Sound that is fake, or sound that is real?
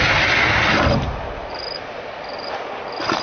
real